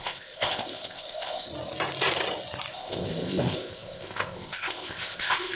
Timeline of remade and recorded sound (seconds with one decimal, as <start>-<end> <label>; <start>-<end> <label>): 0.0-1.5 remade; 1.5-2.7 recorded; 2.7-5.6 remade